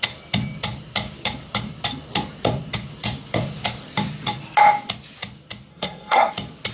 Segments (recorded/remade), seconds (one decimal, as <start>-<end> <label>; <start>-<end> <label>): 0.0-5.7 recorded; 5.7-6.3 remade; 6.3-6.7 recorded